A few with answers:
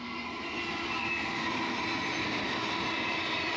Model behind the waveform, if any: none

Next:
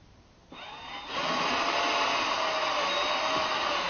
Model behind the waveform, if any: none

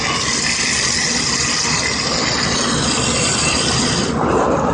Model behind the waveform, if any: none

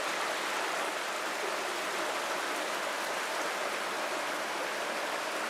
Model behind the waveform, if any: vocoder, BigVGAN v2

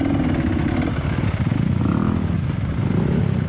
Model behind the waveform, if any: none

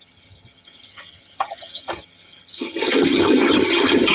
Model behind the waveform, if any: vocoder, HiFi-GAN